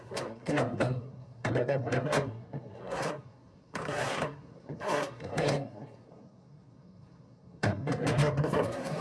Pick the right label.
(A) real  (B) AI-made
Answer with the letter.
B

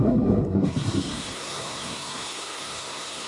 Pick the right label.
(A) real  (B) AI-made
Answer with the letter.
B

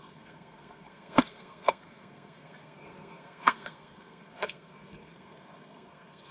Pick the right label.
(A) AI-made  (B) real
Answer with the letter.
A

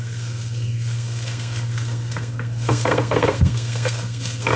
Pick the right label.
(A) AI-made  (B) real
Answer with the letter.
A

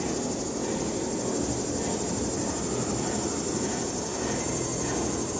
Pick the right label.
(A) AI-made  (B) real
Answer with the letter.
B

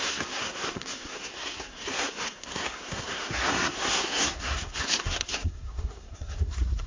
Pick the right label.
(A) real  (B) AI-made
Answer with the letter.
B